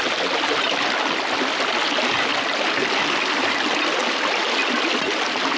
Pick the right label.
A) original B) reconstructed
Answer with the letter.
A